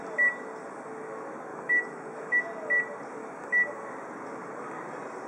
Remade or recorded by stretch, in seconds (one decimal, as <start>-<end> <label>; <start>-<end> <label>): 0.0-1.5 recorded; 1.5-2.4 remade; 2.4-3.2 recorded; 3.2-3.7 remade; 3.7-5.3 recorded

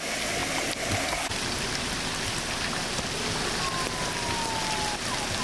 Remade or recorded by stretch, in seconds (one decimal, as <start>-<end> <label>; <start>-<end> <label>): 0.0-5.4 recorded

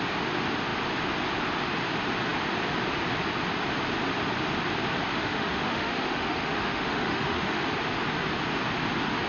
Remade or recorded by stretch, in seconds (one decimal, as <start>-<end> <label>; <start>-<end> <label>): 0.0-5.1 recorded; 5.1-7.6 remade; 7.6-9.3 recorded

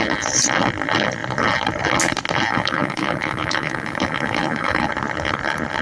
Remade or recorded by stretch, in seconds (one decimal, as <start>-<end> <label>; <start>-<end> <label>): 0.0-2.5 recorded; 2.5-4.9 remade; 4.9-5.8 recorded

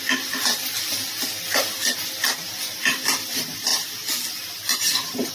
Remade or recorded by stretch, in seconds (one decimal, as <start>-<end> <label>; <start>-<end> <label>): 0.0-5.3 recorded

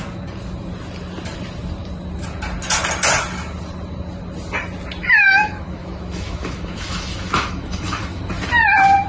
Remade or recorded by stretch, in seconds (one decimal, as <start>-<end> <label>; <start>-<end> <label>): 0.0-5.2 recorded; 5.2-8.2 remade; 8.2-9.1 recorded

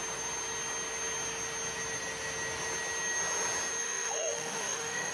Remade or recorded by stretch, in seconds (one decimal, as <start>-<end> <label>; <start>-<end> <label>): 0.0-3.8 recorded; 3.8-5.1 remade

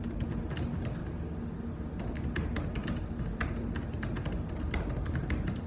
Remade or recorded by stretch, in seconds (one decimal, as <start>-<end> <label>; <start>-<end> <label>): 0.0-5.7 recorded